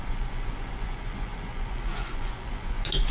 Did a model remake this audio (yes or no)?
yes